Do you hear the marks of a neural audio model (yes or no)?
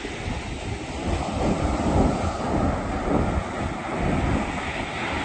no